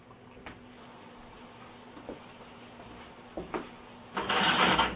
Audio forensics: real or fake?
real